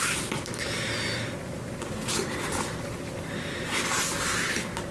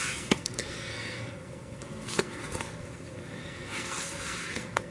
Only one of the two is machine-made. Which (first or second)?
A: second